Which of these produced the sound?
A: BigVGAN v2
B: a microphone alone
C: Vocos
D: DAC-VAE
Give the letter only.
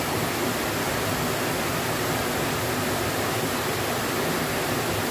B